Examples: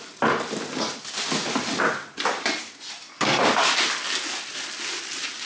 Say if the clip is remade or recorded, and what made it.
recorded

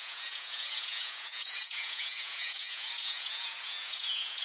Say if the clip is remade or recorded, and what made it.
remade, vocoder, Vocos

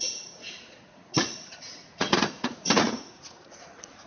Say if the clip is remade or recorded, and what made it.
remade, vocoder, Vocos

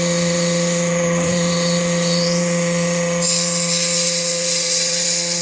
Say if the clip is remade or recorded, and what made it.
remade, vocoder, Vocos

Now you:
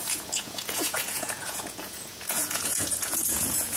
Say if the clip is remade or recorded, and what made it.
remade, vocoder, Vocos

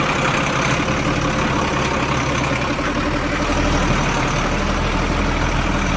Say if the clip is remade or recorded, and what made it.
recorded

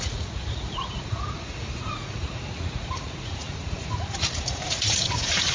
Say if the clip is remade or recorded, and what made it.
remade, vocoder, Vocos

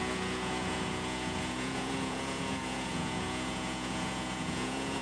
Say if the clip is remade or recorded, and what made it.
remade, vocoder, Vocos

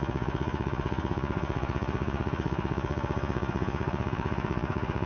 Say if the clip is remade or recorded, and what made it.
remade, vocoder, Vocos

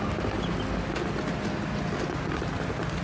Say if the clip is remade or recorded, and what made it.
recorded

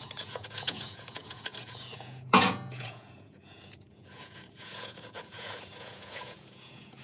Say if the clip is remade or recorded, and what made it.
remade, vocoder, Vocos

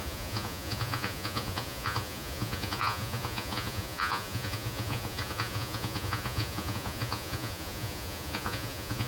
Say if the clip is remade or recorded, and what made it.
remade, vocoder, Vocos